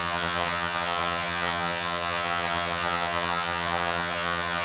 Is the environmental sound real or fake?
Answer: fake